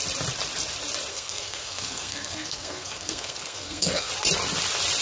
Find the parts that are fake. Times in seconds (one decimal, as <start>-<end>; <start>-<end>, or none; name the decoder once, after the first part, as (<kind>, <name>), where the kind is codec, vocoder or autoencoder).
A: 1.1-4.1 (codec, SNAC)